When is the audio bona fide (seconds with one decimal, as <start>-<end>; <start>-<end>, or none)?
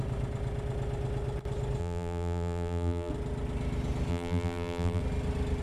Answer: 0.0-1.8; 3.1-4.1; 5.0-5.6